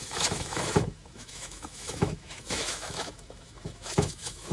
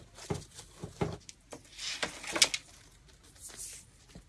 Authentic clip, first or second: second